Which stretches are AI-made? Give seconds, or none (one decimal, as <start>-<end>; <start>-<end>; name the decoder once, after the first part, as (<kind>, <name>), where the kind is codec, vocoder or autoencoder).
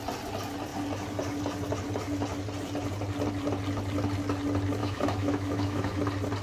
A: 4.8-6.0 (autoencoder, DAC-VAE)